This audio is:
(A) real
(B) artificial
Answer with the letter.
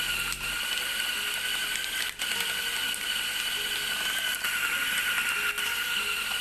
A